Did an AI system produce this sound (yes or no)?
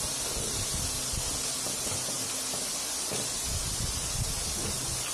no